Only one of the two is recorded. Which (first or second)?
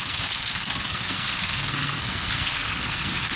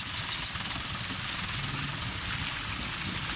second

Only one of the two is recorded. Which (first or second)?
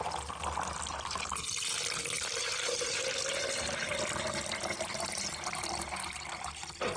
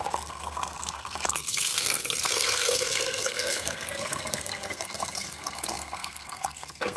first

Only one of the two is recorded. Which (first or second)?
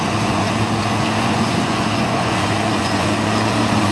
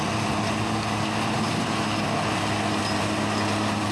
second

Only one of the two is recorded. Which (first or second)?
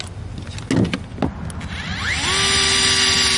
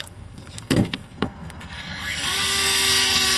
first